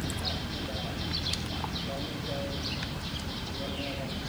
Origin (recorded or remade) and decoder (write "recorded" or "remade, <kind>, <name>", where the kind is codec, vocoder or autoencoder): recorded